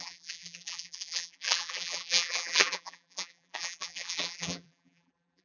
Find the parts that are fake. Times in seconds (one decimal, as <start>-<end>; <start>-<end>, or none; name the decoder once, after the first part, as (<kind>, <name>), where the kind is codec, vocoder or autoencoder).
0.0-5.4 (vocoder, BigVGAN v2)